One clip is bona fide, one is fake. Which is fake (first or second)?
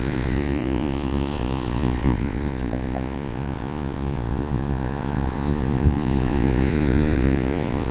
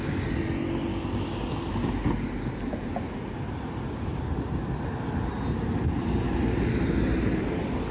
first